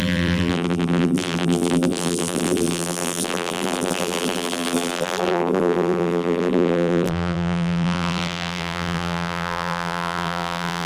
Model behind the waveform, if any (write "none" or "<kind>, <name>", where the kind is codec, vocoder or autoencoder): vocoder, BigVGAN v2